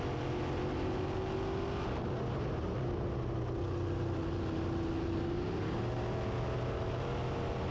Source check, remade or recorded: recorded